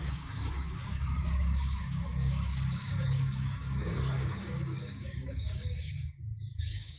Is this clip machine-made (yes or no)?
yes